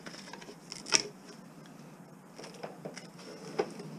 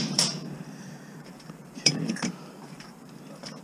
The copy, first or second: second